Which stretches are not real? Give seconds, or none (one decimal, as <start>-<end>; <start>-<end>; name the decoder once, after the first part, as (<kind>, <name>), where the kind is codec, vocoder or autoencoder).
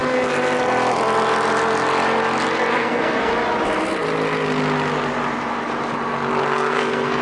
2.7-3.3 (codec, SNAC); 6.4-7.2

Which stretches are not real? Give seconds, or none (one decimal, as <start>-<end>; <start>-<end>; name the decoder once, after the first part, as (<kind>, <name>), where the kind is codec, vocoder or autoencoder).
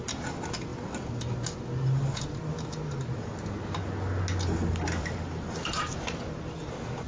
none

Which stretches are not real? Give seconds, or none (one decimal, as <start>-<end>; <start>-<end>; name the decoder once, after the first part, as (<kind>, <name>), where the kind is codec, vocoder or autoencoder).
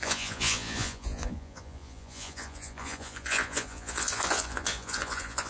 0.0-5.5 (vocoder, Vocos)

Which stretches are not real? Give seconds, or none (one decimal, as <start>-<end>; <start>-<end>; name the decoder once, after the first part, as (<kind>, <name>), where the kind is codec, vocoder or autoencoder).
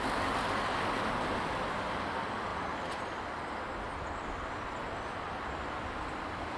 none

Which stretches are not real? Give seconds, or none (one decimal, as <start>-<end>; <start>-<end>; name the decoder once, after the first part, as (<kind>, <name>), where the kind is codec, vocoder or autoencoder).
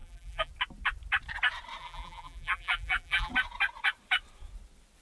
0.0-0.5 (vocoder, BigVGAN v2); 1.8-3.3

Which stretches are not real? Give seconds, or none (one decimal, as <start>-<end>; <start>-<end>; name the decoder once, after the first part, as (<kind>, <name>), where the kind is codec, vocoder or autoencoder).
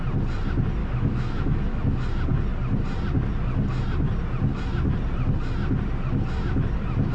0.8-1.8 (autoencoder, DAC-VAE)